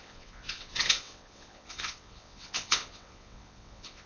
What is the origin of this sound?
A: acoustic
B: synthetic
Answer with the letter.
B